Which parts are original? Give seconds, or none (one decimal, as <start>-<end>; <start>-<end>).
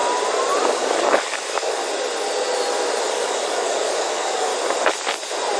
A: 0.0-0.6; 1.8-3.1; 4.5-5.6